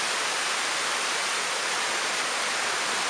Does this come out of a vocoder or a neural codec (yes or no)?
no